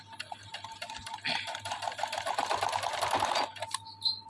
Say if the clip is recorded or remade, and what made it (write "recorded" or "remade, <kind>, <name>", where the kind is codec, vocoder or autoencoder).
recorded